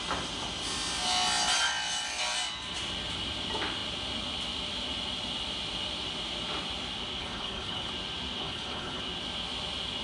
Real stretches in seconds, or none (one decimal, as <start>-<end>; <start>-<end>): 0.0-7.2; 7.9-8.4; 9.0-10.0